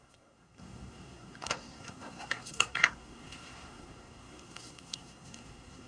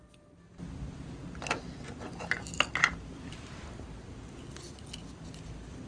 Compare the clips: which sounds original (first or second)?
second